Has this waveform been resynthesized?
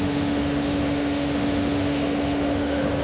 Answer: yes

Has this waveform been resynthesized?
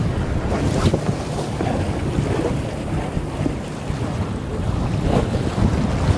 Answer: no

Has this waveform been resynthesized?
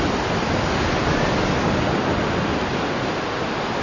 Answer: no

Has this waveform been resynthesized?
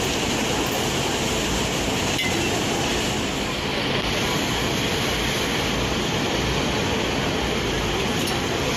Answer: no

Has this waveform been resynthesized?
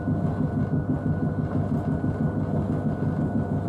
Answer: no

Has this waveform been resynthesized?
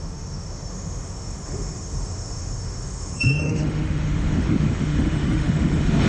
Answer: yes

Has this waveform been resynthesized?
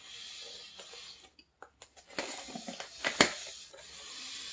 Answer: no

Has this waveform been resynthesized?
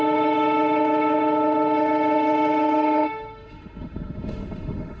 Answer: yes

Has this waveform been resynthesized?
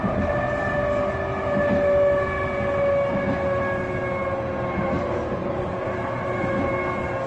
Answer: no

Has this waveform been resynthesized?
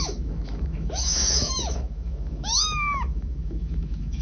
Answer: yes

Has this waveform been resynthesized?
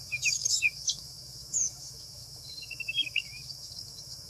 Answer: yes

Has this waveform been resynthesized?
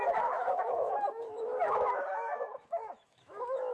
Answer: yes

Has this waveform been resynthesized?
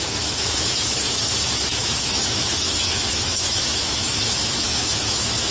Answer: yes